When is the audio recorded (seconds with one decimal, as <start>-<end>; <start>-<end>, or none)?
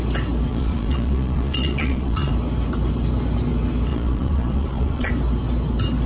0.0-0.5; 2.3-3.9; 5.1-6.1